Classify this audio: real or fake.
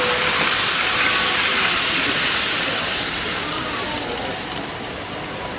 real